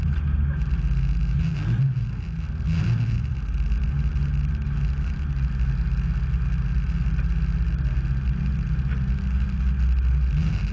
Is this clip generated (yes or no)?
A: no